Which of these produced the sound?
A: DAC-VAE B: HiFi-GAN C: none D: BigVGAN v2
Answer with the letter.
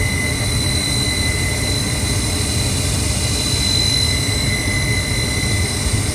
C